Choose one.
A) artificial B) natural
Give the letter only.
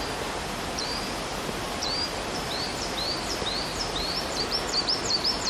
A